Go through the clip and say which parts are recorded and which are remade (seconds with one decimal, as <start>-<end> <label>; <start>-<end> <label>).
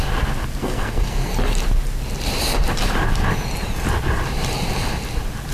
0.0-0.6 recorded; 0.6-1.3 remade; 1.3-5.5 recorded